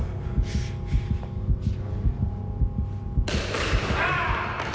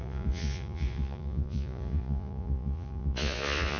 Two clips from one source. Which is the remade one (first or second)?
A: second